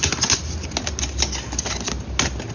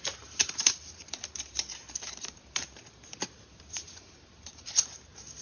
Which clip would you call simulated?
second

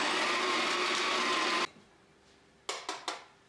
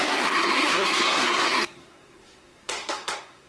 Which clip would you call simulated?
second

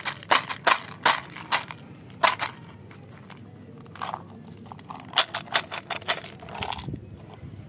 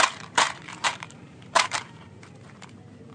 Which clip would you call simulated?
second